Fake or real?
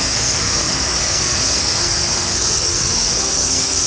fake